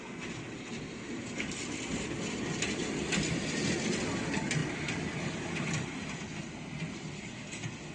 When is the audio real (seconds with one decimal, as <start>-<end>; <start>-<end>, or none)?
0.0-7.9